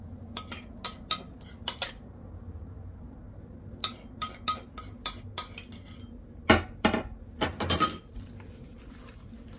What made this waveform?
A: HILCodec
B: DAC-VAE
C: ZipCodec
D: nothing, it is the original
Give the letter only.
D